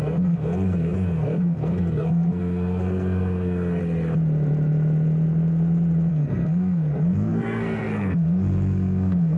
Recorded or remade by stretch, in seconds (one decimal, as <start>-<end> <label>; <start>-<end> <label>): 0.0-3.8 remade; 3.8-6.1 recorded; 6.1-9.4 remade